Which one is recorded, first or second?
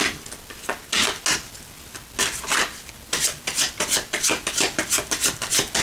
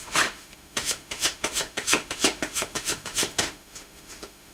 first